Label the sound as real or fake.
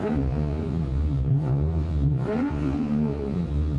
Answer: fake